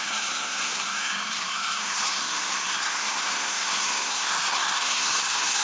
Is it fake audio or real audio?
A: fake